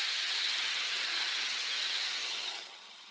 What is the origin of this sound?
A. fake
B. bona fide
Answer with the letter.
A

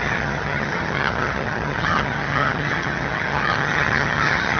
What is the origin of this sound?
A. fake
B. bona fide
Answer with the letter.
A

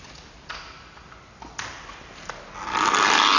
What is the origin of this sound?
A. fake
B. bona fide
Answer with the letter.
B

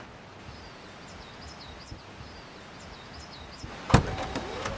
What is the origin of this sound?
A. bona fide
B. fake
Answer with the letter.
A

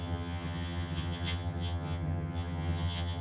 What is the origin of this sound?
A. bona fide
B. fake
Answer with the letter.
B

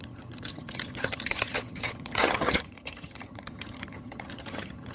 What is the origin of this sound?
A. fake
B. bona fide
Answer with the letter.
A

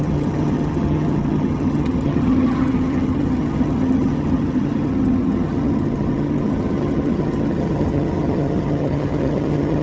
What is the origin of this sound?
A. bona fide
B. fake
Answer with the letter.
B